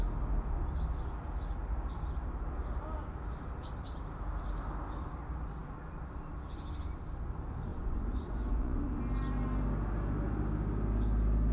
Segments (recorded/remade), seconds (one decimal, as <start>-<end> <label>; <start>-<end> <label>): 0.0-7.7 recorded; 7.7-9.0 remade; 9.0-11.5 recorded